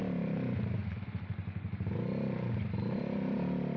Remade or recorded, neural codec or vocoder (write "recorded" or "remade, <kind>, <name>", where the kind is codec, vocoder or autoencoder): recorded